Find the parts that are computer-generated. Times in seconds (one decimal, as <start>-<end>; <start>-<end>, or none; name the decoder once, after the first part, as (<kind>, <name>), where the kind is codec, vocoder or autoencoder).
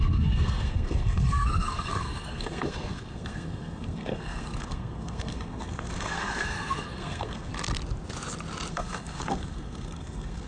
0.0-7.5 (codec, SNAC); 8.7-10.5